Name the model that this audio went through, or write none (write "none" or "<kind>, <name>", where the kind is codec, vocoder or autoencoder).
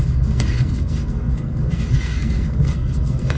codec, SNAC